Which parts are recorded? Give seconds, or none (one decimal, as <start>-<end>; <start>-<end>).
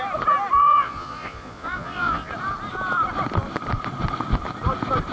0.0-0.6; 2.3-5.1